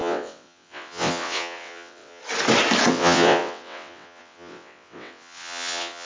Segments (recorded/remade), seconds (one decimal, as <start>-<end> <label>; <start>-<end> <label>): 0.0-2.2 remade; 2.2-2.9 recorded; 2.9-6.1 remade